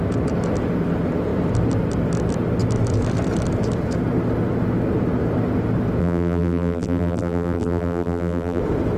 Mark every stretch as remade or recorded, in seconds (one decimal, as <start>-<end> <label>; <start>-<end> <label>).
0.0-6.0 recorded; 6.0-8.6 remade; 8.6-9.0 recorded